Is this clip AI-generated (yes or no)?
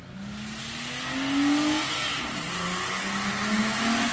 no